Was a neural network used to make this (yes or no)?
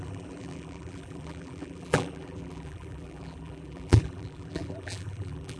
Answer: yes